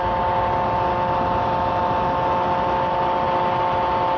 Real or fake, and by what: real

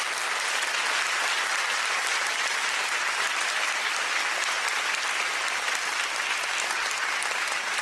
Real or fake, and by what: real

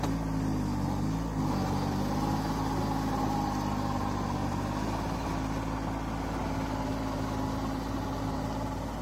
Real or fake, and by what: real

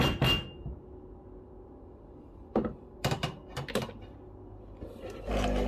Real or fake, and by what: real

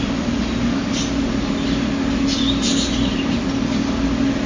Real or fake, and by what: real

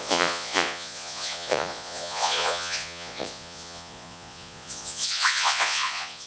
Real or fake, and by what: fake, vocoder, Vocos